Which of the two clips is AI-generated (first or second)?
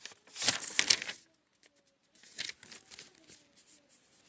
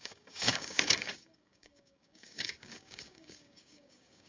second